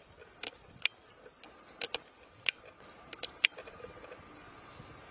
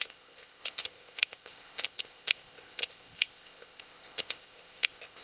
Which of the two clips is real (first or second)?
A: first